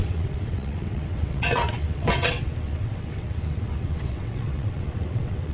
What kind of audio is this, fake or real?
fake